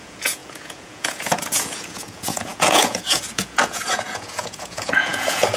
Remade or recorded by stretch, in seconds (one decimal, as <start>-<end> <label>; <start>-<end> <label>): 0.0-5.6 remade